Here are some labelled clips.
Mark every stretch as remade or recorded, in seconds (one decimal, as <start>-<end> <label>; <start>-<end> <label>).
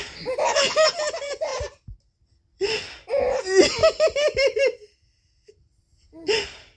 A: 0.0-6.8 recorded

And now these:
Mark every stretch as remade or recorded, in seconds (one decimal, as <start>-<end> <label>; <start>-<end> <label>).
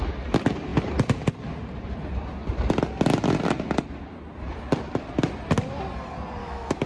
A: 0.0-6.4 recorded; 6.4-6.9 remade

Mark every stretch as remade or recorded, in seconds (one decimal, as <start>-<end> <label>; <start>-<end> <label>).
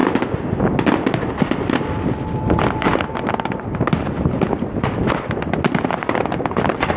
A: 0.0-7.0 recorded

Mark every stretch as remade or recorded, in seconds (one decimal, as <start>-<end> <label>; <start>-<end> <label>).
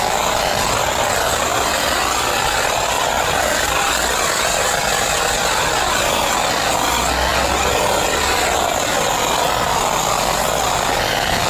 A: 0.0-11.5 recorded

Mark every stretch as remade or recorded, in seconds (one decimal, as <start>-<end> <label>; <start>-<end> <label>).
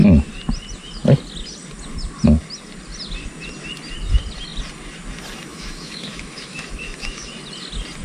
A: 0.0-5.5 recorded; 5.5-7.3 remade; 7.3-8.0 recorded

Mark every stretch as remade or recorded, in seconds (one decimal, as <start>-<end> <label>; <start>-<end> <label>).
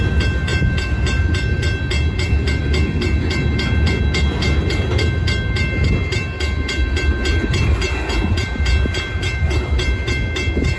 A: 0.0-10.8 recorded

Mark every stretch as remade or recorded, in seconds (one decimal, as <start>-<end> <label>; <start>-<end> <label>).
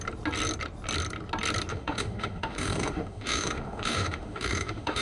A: 0.0-1.7 recorded; 1.7-5.0 remade